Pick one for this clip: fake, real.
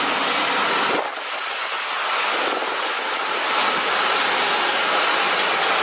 real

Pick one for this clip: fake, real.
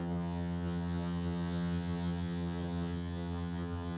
fake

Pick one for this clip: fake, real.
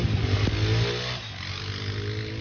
real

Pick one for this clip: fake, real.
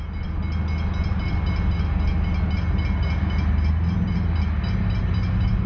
real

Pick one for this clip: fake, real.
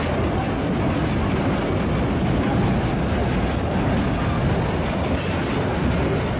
real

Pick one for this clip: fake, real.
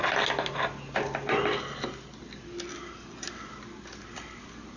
real